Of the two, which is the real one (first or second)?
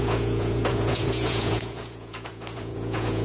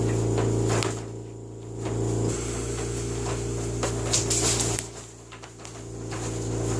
second